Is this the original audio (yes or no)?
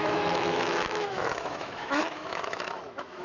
no